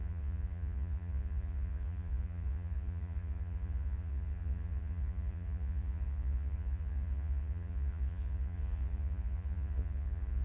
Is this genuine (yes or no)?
no